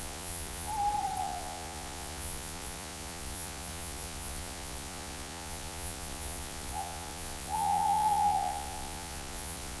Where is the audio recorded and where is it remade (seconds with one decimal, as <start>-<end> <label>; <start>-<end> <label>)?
0.0-0.7 remade; 0.7-1.2 recorded; 1.2-9.8 remade